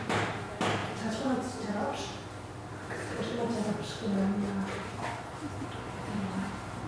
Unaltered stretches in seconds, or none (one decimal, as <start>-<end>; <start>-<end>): 0.0-6.9